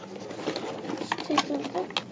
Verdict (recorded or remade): recorded